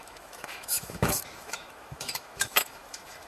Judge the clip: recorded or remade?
remade